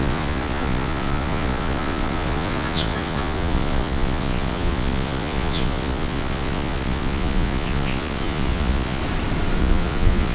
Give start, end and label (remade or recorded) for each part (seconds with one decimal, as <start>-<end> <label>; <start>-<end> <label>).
0.0-9.0 remade; 9.0-9.6 recorded; 9.6-10.3 remade